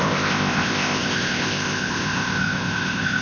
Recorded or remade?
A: remade